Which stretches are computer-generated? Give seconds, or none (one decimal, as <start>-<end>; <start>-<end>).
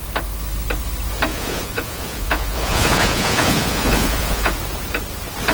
1.3-4.6